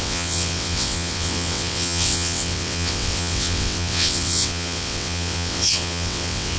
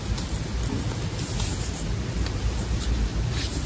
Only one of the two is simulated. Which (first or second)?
first